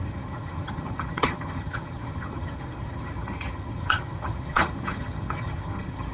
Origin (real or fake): fake